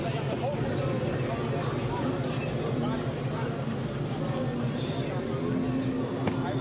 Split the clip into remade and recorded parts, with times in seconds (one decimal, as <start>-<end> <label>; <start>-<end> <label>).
0.0-6.6 recorded